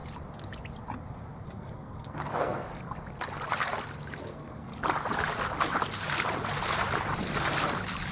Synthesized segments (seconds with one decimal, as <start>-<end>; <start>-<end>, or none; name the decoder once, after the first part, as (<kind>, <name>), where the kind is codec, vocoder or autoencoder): 1.4-2.7 (codec, SNAC); 4.2-4.7

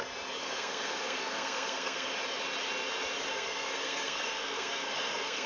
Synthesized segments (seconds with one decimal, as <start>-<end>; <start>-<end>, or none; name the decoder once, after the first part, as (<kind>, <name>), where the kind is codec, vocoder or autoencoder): 0.4-2.1 (codec, SNAC); 3.3-5.5

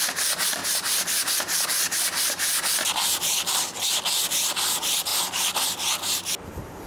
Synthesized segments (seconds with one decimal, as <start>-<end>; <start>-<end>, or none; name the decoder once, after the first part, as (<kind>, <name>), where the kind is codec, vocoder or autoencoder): 0.0-0.6 (vocoder, BigVGAN v2); 1.4-5.1; 6.5-6.9

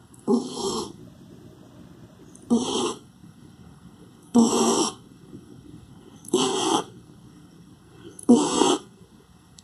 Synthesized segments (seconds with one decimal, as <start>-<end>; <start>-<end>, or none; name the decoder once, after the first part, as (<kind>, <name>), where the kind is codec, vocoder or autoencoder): 0.0-1.0 (codec, SNAC); 2.8-9.6

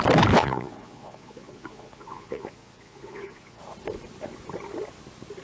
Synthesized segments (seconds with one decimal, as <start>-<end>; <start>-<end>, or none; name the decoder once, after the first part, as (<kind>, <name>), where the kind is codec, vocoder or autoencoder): 0.4-3.6 (vocoder, Vocos)